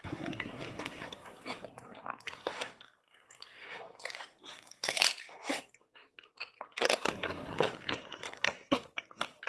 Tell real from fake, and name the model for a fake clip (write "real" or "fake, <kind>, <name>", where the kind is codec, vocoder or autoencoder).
fake, codec, SNAC